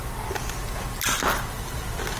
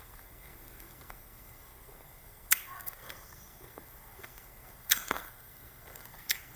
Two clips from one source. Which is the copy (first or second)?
second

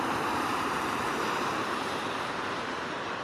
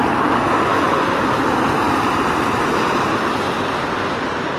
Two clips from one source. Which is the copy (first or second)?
first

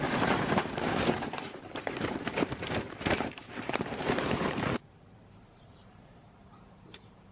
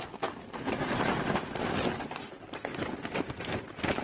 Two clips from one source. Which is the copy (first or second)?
first